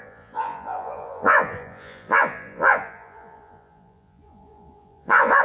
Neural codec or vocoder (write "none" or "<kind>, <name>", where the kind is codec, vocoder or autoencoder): vocoder, Vocos